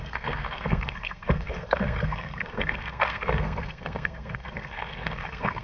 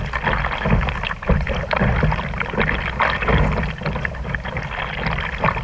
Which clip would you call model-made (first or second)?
first